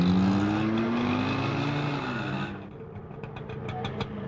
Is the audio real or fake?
real